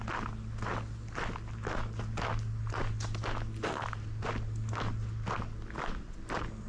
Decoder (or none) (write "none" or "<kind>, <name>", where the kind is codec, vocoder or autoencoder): none